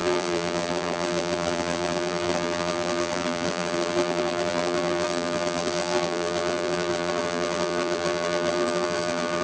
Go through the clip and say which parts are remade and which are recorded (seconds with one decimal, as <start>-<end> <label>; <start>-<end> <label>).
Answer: 0.0-9.4 remade